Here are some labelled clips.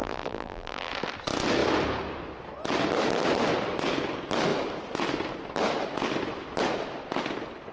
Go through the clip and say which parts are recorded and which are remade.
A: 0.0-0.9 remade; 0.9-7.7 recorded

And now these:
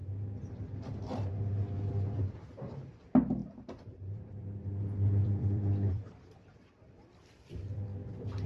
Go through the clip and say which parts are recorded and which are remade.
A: 0.0-0.5 recorded; 0.5-0.9 remade; 0.9-1.9 recorded; 1.9-7.9 remade; 7.9-8.5 recorded

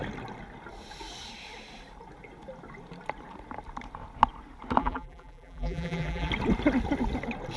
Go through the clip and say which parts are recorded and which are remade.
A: 0.0-4.8 recorded; 4.8-6.3 remade; 6.3-7.6 recorded

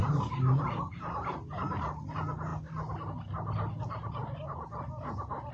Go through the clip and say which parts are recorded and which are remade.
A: 0.0-1.5 remade; 1.5-5.5 recorded

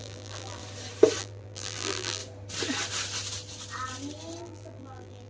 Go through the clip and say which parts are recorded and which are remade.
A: 0.0-0.6 remade; 0.6-1.2 recorded; 1.2-2.2 remade; 2.2-4.4 recorded; 4.4-5.3 remade

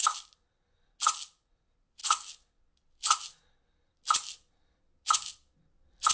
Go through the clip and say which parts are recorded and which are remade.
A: 0.0-6.1 recorded

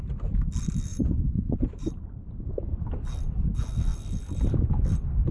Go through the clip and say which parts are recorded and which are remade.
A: 0.0-0.9 recorded; 0.9-2.7 remade; 2.7-5.3 recorded